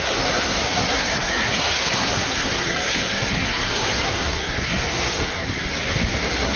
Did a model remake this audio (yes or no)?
yes